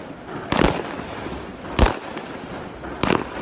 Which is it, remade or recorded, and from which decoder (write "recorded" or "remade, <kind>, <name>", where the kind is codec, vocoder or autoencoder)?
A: recorded